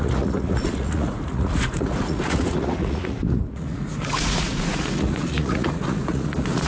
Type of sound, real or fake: fake